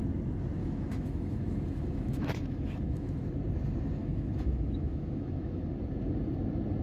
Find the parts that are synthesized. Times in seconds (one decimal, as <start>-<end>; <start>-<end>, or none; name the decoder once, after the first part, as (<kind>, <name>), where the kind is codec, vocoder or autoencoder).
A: 0.6-3.2 (autoencoder, DAC-VAE); 4.0-5.7